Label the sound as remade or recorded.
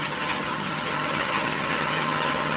remade